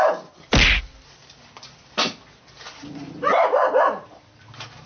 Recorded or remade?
recorded